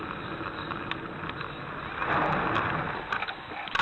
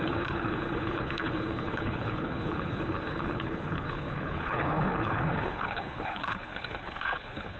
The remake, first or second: second